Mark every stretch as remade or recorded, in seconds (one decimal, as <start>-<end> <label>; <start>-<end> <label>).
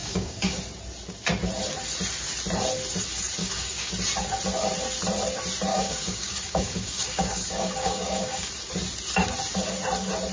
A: 0.0-0.6 remade; 0.6-3.4 recorded; 3.4-3.9 remade; 3.9-5.7 recorded; 5.7-8.5 remade; 8.5-10.3 recorded